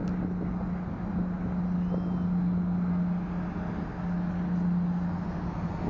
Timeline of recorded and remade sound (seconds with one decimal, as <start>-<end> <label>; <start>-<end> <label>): 0.0-5.9 recorded